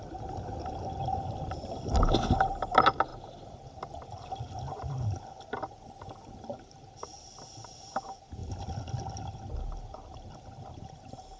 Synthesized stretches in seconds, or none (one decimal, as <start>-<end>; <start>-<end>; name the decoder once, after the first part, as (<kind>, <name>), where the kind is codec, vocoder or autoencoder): none